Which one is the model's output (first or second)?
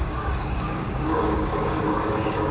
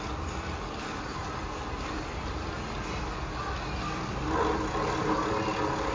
first